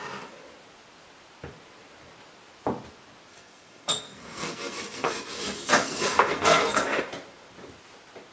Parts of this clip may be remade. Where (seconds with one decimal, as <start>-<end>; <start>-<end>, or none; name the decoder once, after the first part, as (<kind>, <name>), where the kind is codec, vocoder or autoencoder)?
3.3-7.0 (codec, SNAC)